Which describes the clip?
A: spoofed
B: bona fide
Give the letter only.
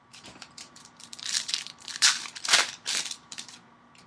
A